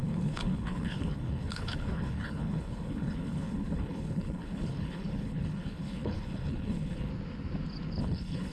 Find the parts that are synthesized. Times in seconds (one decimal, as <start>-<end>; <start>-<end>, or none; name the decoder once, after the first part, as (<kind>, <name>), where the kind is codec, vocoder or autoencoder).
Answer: 0.0-7.1 (codec, HILCodec); 8.0-8.5